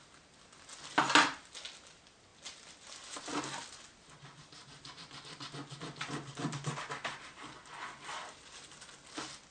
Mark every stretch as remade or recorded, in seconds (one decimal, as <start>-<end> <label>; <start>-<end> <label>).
0.0-9.5 recorded